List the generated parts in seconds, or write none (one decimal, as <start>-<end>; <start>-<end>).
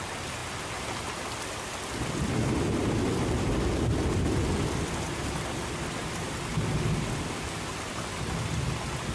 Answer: none